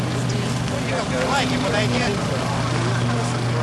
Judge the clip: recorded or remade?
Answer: recorded